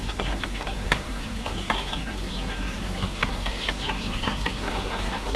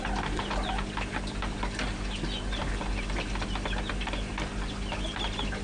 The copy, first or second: first